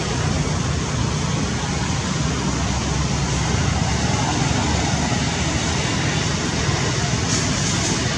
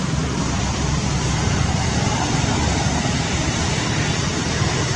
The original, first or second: first